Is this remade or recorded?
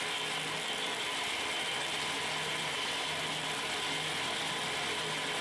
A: recorded